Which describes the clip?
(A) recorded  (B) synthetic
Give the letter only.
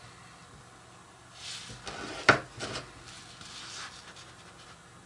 A